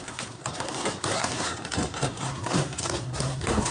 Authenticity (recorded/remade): remade